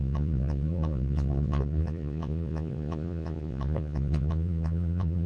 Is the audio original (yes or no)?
no